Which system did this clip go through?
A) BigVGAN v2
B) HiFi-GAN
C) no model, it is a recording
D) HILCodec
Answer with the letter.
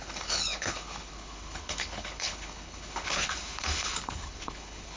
D